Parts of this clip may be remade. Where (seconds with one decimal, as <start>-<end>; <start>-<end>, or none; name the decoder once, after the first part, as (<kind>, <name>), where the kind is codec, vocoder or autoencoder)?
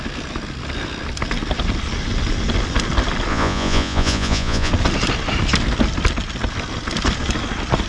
3.3-4.7 (vocoder, Vocos)